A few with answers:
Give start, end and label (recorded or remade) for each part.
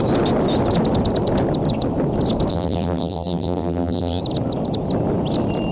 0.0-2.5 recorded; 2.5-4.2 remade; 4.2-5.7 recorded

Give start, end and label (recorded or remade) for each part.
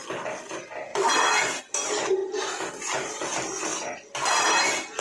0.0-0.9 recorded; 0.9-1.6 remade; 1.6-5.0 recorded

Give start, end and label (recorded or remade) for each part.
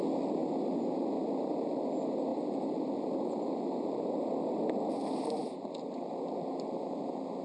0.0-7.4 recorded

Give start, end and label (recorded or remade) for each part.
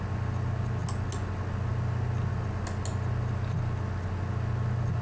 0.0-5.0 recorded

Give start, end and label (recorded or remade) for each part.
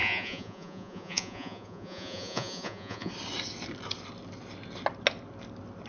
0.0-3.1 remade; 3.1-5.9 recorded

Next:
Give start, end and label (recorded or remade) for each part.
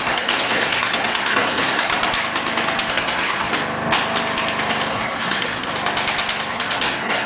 0.0-1.9 remade; 1.9-2.9 recorded; 2.9-3.5 remade; 3.5-4.9 recorded; 4.9-5.7 remade; 5.7-6.5 recorded; 6.5-7.3 remade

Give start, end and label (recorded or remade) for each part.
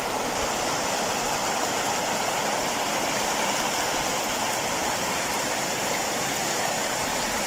0.0-4.8 recorded; 4.8-6.4 remade; 6.4-7.5 recorded